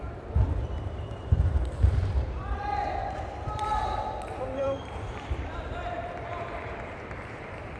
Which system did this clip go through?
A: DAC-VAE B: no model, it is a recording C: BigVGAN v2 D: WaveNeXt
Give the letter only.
C